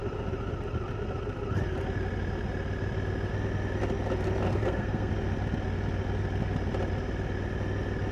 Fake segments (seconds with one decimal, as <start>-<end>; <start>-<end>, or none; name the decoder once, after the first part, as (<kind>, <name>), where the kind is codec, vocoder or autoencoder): 4.5-5.1 (codec, SNAC)

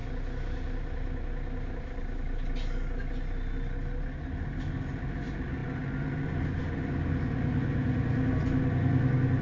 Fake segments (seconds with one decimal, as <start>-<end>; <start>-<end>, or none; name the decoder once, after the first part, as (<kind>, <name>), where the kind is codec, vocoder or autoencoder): none

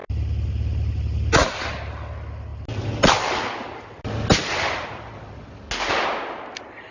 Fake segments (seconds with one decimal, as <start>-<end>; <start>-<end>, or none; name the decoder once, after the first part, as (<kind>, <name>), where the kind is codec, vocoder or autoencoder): none

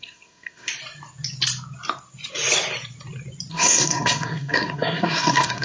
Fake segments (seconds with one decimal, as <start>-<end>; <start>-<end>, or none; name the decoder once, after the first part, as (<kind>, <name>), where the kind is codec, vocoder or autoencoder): 0.0-0.7 (codec, SNAC); 3.5-5.6

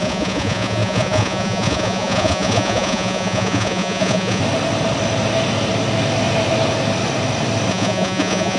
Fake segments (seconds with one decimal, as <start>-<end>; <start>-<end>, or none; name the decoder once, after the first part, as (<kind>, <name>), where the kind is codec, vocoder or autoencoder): 0.0-4.4 (vocoder, Vocos); 7.7-8.6

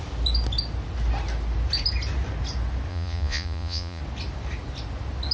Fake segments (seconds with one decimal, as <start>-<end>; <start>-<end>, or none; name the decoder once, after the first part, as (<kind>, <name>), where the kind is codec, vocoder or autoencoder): 2.9-4.0 (vocoder, Vocos)

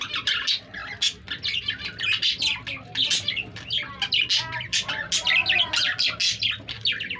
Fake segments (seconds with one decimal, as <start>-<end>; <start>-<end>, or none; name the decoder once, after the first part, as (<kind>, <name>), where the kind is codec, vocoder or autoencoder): none